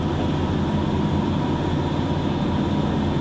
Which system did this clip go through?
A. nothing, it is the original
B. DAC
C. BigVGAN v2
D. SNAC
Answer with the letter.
A